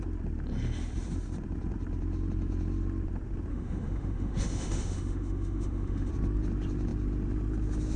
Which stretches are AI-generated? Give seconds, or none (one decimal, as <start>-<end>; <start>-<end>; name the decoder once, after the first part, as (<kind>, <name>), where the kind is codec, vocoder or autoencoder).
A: 3.5-6.1 (autoencoder, DAC-VAE)